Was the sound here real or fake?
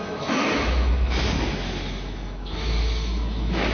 fake